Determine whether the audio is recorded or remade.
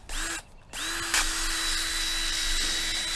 recorded